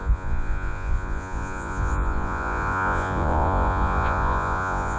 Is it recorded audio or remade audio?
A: remade